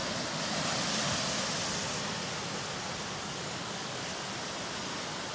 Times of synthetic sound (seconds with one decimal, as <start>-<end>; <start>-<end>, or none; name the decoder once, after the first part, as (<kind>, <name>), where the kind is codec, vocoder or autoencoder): 3.2-4.1 (codec, DAC)